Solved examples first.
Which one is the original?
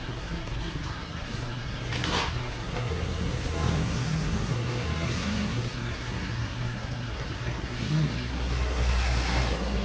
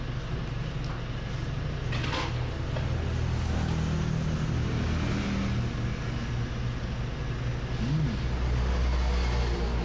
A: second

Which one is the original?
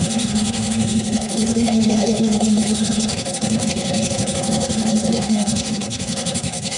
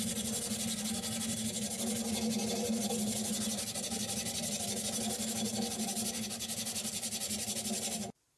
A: second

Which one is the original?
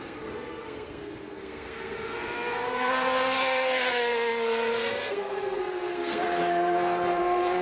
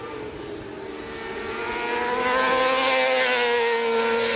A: second